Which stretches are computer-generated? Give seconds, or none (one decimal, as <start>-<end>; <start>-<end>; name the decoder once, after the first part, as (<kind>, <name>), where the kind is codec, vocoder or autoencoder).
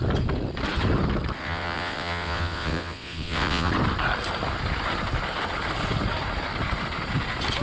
1.4-3.7 (vocoder, WaveNeXt)